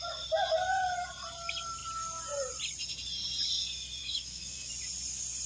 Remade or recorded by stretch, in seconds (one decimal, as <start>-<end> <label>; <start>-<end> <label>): 0.0-4.0 recorded; 4.0-4.7 remade; 4.7-5.5 recorded